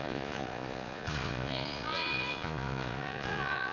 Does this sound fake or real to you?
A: fake